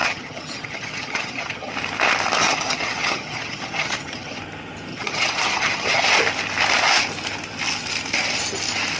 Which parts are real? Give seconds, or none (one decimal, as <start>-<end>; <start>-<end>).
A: 1.7-2.4; 4.4-4.9; 6.0-9.0